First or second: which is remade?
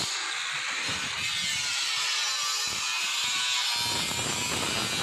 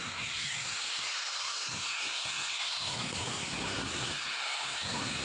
second